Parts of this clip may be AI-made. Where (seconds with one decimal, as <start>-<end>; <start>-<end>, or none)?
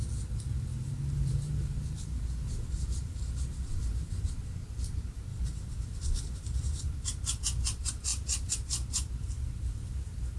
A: 0.7-4.4; 5.3-7.4; 8.1-9.4